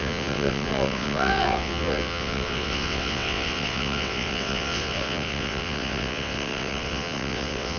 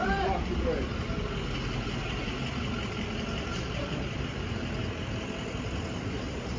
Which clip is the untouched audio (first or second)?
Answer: second